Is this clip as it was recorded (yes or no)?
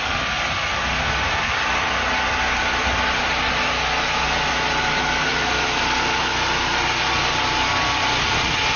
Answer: yes